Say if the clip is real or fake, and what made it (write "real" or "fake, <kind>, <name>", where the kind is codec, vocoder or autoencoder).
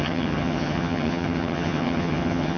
fake, vocoder, HiFi-GAN